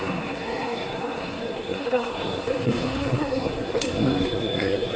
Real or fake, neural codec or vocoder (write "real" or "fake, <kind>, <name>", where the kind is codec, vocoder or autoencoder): fake, codec, SNAC